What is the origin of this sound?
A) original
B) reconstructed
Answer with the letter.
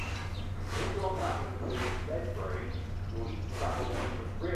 A